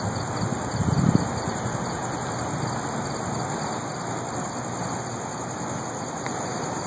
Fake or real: real